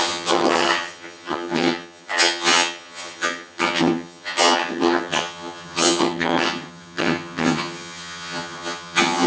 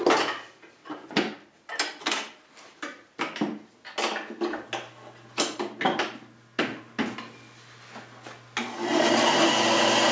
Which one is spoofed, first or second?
first